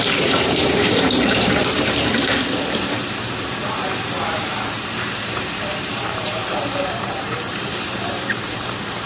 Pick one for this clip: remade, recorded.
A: remade